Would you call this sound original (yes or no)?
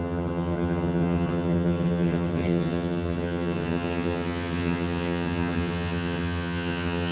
no